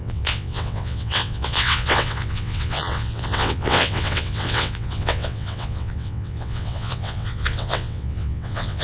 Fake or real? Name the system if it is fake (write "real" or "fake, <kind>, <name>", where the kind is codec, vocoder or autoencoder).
fake, vocoder, WaveNeXt